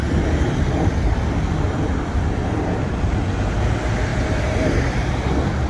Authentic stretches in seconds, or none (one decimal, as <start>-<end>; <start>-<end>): 0.0-2.4; 3.0-4.1; 5.2-5.7